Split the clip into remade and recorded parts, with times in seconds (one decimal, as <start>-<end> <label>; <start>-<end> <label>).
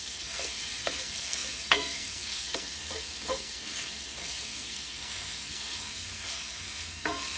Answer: 0.0-7.4 remade